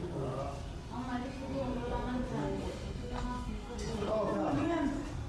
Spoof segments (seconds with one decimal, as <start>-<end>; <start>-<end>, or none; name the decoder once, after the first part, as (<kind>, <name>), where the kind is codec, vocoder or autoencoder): 2.4-4.1 (codec, SNAC)